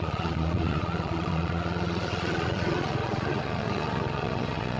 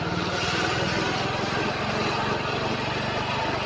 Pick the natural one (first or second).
second